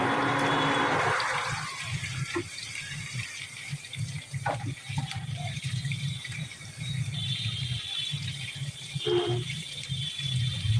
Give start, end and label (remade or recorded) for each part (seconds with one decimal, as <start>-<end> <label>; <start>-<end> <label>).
0.0-10.8 remade